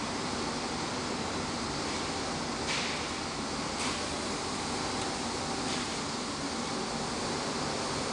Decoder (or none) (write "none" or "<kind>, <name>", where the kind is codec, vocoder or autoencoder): none